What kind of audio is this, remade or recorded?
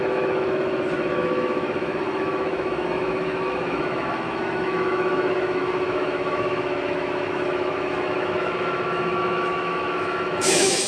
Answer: remade